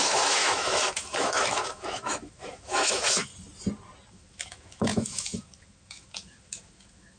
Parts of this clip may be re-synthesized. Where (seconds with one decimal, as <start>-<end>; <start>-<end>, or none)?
0.0-3.3; 4.1-7.2